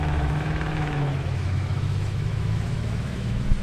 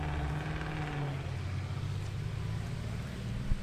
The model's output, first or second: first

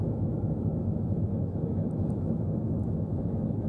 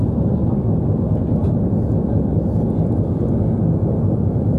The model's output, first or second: first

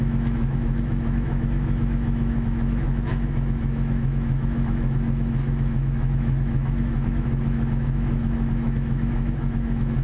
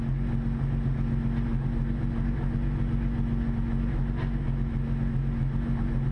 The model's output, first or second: first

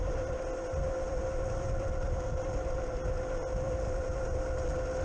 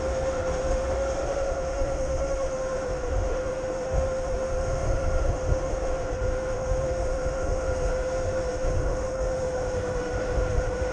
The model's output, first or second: second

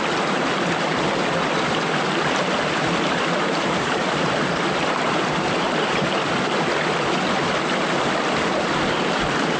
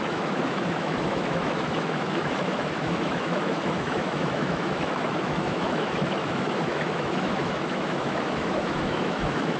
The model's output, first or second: second